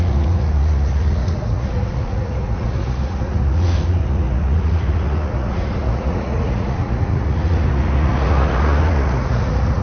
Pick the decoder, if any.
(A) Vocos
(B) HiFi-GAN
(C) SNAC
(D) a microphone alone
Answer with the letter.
A